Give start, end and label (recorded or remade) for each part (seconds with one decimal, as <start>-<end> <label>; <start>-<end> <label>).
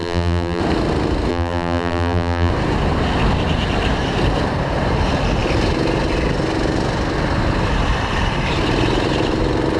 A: 0.0-0.6 remade; 0.6-1.3 recorded; 1.3-2.5 remade; 2.5-9.8 recorded